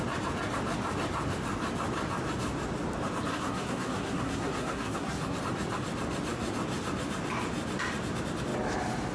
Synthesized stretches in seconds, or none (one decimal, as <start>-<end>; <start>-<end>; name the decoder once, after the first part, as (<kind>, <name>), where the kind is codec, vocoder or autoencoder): 3.3-5.4 (codec, SNAC)